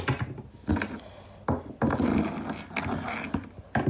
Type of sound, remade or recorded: recorded